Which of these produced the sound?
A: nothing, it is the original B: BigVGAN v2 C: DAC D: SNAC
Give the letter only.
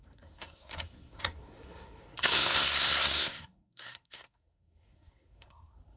D